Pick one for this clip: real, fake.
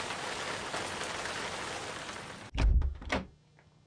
real